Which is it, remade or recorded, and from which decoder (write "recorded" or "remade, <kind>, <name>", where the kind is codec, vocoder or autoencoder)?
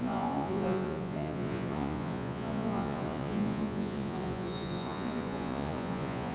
remade, vocoder, Vocos